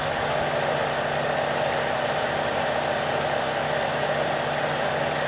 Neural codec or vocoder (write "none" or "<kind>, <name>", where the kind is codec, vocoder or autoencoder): none